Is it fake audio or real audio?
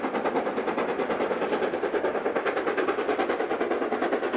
real